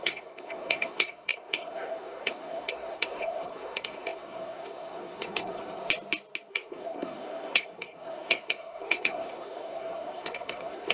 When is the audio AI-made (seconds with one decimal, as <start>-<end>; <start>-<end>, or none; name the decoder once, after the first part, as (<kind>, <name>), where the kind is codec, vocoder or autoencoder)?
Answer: 0.0-5.8 (codec, SNAC); 6.5-10.9